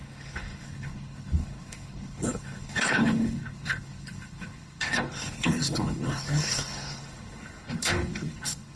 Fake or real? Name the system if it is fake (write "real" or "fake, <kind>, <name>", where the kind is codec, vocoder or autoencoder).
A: fake, codec, HILCodec